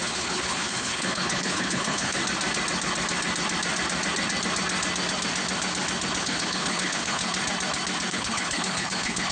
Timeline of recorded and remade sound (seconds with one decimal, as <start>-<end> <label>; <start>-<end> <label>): 0.0-2.2 remade; 2.2-6.2 recorded; 6.2-7.2 remade; 7.2-8.1 recorded; 8.1-9.3 remade